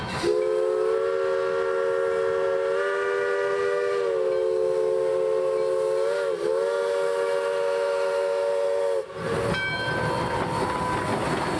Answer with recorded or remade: recorded